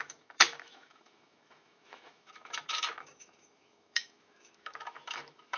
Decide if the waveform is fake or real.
fake